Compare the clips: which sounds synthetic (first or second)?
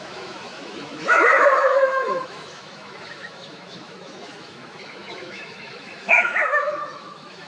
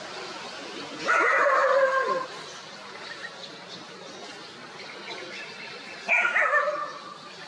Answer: first